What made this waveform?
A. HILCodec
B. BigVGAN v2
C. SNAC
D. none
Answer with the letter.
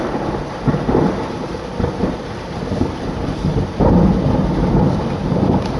B